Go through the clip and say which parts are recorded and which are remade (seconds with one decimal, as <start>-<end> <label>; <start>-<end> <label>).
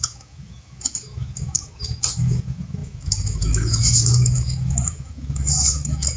0.0-6.2 remade